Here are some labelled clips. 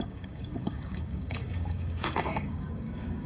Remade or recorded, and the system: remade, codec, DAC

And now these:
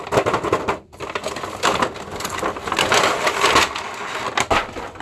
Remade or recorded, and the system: recorded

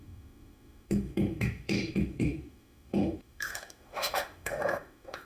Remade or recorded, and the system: remade, autoencoder, DAC-VAE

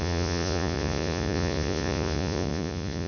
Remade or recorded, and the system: remade, vocoder, Vocos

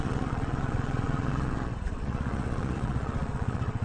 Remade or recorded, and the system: remade, vocoder, Vocos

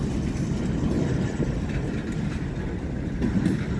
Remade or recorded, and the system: recorded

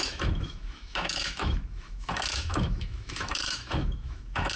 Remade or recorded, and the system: remade, autoencoder, DAC-VAE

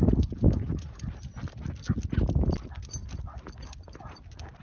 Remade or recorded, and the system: recorded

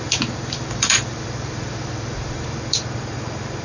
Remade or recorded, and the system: remade, vocoder, BigVGAN v2